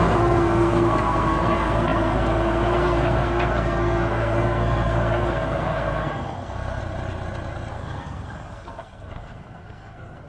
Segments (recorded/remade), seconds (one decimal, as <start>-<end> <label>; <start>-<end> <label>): 0.0-6.8 remade; 6.8-7.7 recorded; 7.7-10.3 remade